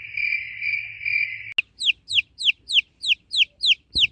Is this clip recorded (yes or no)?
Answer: yes